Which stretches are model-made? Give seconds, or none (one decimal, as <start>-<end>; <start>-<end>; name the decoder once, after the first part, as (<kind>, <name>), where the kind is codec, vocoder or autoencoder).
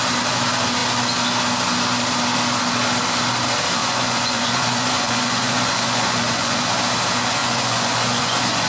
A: 3.8-6.7 (vocoder, Vocos); 7.4-8.7